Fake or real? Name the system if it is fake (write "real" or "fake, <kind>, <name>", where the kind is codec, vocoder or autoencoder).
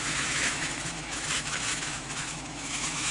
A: fake, autoencoder, DAC-VAE